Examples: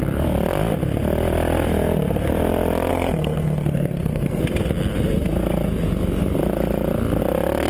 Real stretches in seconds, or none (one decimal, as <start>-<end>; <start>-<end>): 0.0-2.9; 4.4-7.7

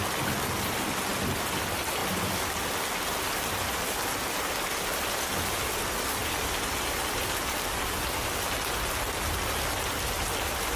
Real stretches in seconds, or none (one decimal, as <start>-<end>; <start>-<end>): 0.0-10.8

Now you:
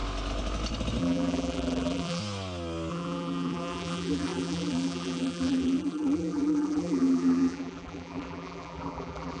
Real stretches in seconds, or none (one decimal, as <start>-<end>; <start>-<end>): 0.0-1.0; 2.2-2.9